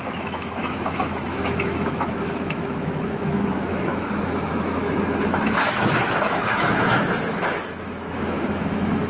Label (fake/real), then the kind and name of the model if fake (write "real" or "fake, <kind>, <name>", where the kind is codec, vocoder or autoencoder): fake, autoencoder, DAC-VAE